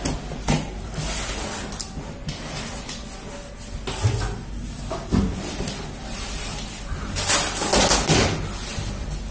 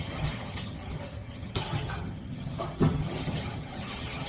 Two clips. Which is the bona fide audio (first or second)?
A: first